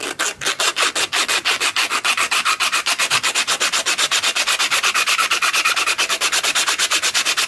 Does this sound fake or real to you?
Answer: real